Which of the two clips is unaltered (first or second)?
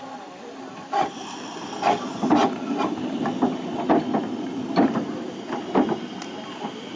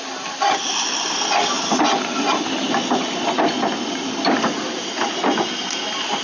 second